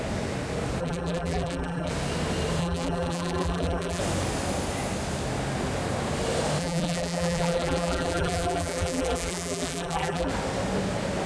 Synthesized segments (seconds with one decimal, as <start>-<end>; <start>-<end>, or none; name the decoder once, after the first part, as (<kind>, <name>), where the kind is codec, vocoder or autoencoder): 0.8-1.9 (vocoder, BigVGAN v2); 2.6-4.0; 6.6-10.3